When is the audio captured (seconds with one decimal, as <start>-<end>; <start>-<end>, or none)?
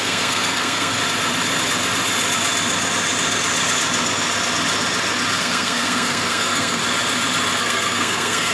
1.0-5.4; 6.8-7.6